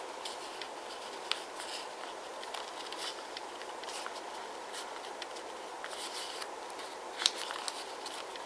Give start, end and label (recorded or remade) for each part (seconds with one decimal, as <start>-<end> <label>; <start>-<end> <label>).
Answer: 0.0-3.1 recorded; 3.1-3.7 remade; 3.7-8.5 recorded